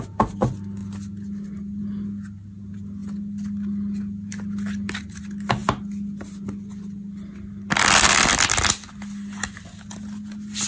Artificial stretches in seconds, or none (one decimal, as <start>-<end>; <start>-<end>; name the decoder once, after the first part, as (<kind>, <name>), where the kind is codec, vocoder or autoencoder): none